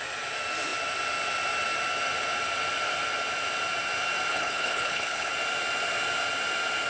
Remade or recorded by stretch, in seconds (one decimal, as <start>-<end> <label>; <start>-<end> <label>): 0.0-4.3 recorded; 4.3-5.3 remade; 5.3-6.9 recorded